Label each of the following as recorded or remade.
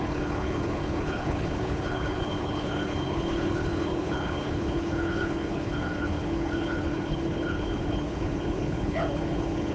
remade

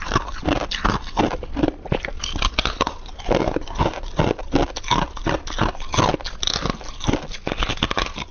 recorded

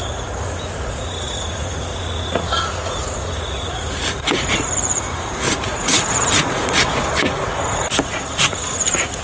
remade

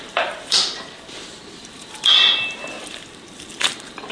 remade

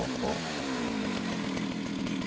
recorded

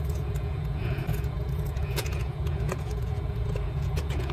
remade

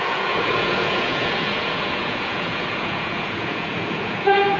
remade